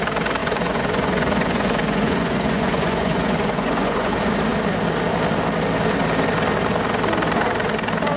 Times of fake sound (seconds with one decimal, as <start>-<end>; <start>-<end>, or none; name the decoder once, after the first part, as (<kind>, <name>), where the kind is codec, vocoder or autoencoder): 0.4-4.1 (vocoder, Vocos)